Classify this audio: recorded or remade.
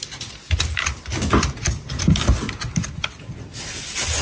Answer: recorded